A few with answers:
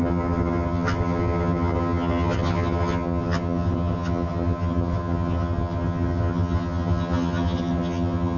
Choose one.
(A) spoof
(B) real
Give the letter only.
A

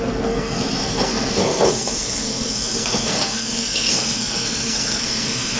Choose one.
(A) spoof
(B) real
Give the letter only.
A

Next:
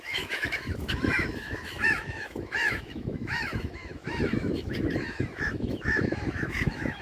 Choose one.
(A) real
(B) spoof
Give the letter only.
B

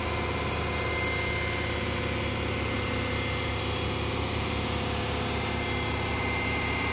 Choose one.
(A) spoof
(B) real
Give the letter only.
B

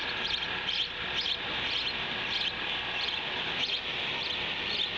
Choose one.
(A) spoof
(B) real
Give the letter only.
B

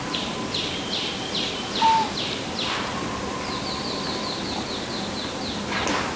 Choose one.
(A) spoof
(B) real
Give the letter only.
B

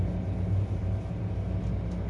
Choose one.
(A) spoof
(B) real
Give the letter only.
B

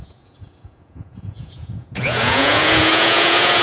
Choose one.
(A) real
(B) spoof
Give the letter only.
B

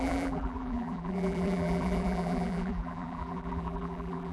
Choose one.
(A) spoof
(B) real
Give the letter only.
A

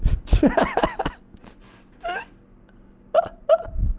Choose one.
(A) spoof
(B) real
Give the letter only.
B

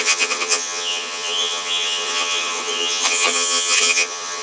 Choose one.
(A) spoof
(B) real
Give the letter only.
A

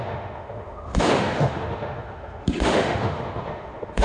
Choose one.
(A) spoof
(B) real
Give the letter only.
A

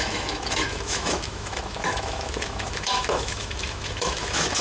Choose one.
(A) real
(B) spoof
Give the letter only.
B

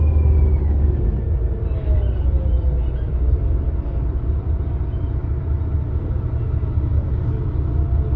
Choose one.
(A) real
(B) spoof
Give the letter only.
A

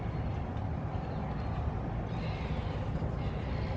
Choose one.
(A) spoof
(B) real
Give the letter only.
B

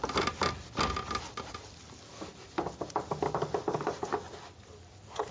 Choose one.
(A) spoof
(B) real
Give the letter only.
B